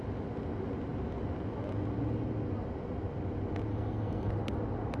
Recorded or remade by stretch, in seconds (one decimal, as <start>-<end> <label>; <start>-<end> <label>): 0.0-3.7 recorded; 3.7-4.3 remade; 4.3-5.0 recorded